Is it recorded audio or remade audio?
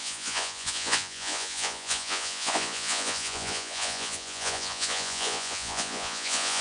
remade